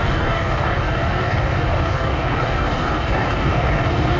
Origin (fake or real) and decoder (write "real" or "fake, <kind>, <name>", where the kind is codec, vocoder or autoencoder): fake, codec, DAC